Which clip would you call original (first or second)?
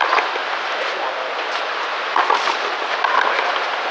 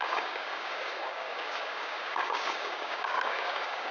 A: first